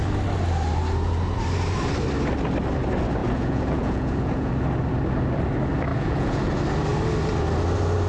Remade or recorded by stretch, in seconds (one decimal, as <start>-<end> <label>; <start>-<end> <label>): 0.0-3.2 recorded; 3.2-4.5 remade; 4.5-5.9 recorded; 5.9-6.5 remade; 6.5-8.1 recorded